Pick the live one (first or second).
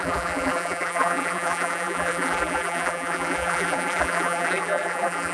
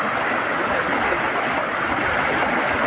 second